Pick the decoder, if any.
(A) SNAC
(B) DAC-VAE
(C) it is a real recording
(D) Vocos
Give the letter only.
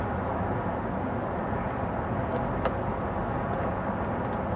C